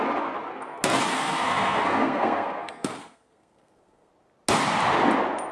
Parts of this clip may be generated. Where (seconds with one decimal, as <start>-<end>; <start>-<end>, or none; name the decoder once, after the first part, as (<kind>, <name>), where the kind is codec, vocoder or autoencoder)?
1.1-4.1 (codec, SNAC)